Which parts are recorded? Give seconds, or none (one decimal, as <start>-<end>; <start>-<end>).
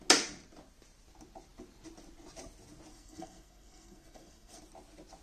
0.0-2.9; 4.6-5.2